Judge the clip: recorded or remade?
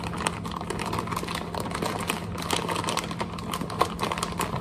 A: recorded